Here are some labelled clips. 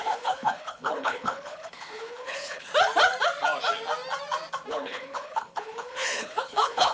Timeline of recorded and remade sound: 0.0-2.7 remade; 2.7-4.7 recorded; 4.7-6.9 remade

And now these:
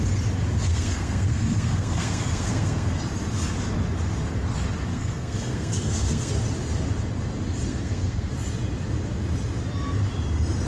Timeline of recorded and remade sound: 0.0-0.7 recorded; 0.7-3.0 remade; 3.0-4.9 recorded; 4.9-6.3 remade; 6.3-7.7 recorded; 7.7-8.3 remade; 8.3-10.7 recorded

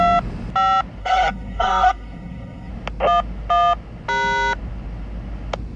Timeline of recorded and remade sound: 0.0-1.0 recorded; 1.0-2.7 remade; 2.7-5.8 recorded